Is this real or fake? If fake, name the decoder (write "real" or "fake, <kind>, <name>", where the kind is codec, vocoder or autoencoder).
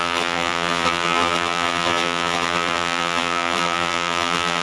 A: fake, vocoder, BigVGAN v2